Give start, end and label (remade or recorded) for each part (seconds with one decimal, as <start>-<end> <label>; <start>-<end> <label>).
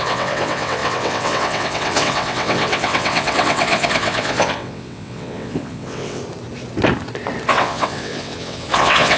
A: 0.0-6.2 remade; 6.2-7.5 recorded; 7.5-9.2 remade